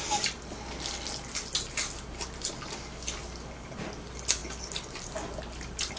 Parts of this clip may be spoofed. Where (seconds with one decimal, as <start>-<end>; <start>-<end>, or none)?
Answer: none